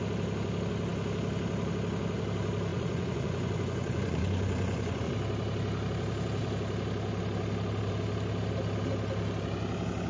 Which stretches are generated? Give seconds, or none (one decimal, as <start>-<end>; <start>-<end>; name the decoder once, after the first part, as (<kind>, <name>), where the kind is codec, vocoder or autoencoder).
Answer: 2.7-5.1 (vocoder, Vocos)